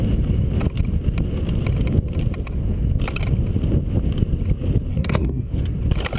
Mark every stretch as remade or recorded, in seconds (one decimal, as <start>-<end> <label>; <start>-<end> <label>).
0.0-4.9 recorded; 4.9-5.5 remade; 5.5-6.2 recorded